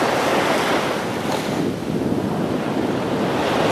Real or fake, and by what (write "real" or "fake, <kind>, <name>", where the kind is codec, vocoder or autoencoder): real